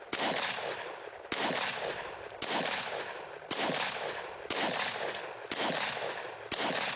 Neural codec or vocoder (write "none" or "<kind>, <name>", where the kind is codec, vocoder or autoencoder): none